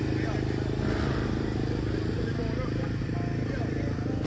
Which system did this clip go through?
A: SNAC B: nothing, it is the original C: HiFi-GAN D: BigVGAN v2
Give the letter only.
B